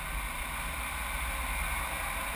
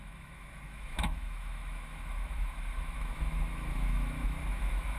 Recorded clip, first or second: first